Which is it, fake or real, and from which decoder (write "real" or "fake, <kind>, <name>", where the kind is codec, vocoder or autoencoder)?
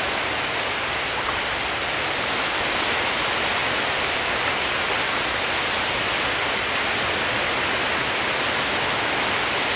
real